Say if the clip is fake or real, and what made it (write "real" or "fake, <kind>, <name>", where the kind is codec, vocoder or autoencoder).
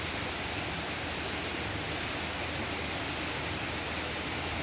real